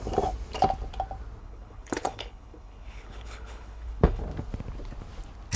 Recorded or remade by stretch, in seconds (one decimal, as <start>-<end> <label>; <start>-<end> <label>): 0.0-1.4 recorded; 1.4-4.2 remade; 4.2-5.6 recorded